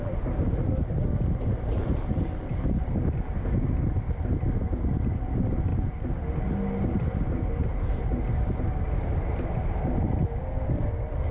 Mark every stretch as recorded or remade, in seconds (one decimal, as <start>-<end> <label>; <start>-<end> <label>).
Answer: 0.0-11.3 recorded